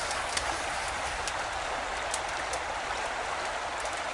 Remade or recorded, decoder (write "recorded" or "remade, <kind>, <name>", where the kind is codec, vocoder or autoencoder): recorded